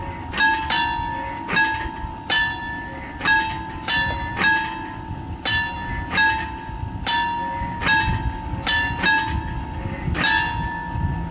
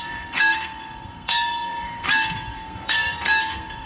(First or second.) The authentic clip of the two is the first